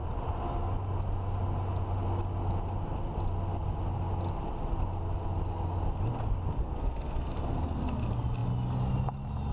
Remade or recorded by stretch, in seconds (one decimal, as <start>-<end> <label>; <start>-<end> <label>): 0.0-6.6 recorded; 6.6-7.9 remade; 7.9-9.5 recorded